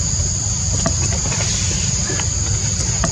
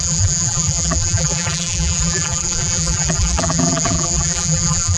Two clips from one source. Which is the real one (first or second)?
first